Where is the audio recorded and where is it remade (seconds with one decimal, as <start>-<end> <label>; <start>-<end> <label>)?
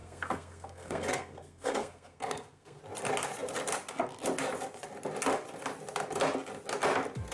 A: 0.0-2.8 remade; 2.8-7.3 recorded